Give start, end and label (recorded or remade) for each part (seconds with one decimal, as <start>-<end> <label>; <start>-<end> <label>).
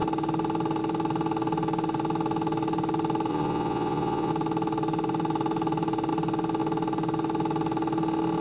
0.0-3.3 recorded; 3.3-4.3 remade; 4.3-8.4 recorded